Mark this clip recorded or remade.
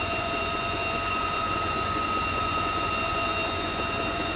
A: remade